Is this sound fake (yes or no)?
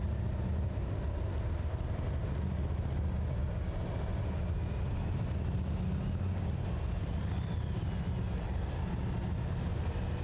no